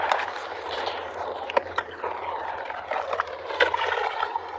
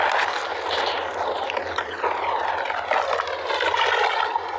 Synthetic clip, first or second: first